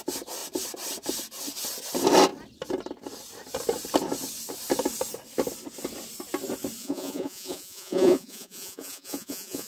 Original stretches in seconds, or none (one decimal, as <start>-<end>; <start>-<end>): 0.0-6.8